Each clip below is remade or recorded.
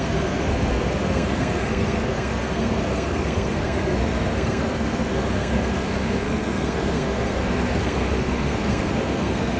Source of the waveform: remade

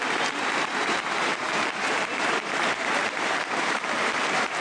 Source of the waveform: remade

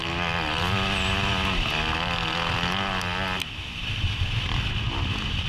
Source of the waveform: recorded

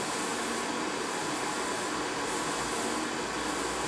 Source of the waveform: recorded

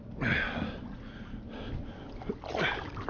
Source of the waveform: recorded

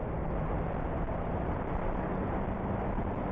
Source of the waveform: recorded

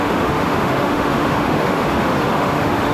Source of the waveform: remade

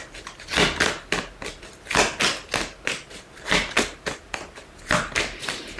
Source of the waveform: recorded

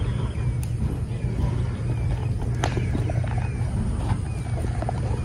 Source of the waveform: recorded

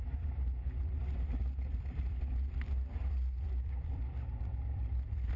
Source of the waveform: remade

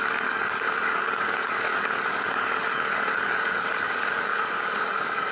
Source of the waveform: remade